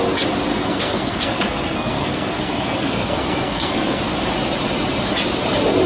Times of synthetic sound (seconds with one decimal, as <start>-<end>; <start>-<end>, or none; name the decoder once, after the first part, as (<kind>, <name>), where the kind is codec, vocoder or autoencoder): 0.5-4.0 (codec, SNAC)